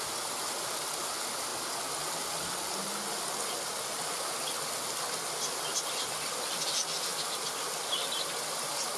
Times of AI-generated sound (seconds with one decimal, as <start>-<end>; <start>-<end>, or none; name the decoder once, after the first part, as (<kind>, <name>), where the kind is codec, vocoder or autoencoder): none